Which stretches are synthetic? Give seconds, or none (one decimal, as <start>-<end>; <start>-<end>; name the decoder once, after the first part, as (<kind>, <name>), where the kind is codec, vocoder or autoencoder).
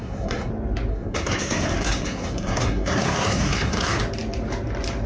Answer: 0.0-0.5 (codec, SNAC); 0.9-4.0